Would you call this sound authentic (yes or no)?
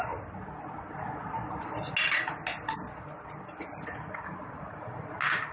yes